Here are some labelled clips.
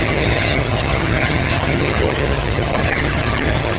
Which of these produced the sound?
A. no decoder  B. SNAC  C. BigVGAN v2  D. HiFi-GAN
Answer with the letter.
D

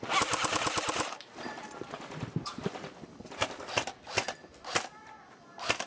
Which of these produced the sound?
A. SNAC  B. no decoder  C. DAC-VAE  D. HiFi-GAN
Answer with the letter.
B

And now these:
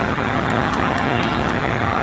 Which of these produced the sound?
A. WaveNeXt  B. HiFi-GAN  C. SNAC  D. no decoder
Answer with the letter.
B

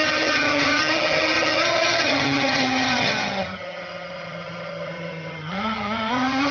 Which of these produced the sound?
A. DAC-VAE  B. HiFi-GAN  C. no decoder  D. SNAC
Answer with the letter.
B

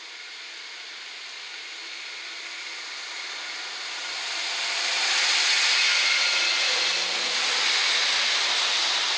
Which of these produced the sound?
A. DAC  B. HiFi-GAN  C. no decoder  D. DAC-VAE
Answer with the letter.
C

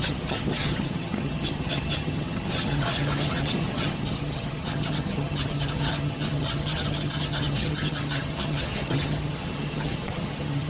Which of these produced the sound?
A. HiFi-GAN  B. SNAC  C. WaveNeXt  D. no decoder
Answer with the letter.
A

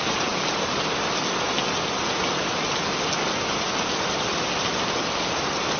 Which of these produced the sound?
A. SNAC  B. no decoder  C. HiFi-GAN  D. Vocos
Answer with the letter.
B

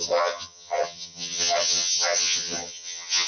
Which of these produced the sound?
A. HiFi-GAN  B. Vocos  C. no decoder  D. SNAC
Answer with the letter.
A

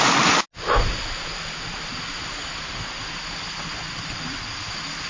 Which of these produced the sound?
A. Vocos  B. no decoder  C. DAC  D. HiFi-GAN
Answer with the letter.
B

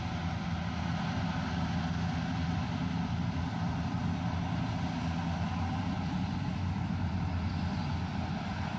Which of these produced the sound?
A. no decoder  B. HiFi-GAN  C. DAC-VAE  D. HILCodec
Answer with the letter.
A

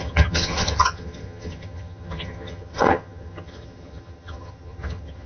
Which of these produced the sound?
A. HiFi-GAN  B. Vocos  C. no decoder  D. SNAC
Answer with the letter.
A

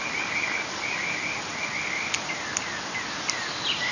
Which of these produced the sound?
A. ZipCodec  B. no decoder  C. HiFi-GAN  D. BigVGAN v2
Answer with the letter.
B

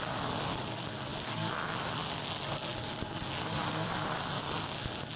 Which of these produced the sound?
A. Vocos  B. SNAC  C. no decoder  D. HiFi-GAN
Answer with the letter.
C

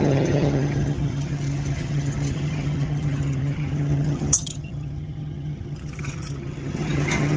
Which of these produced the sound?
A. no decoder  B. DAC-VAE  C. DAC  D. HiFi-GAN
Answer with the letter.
D